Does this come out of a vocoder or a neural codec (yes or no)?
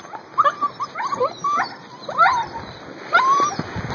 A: no